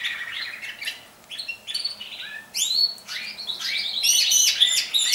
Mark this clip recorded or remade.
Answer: recorded